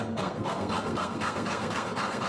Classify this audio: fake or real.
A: fake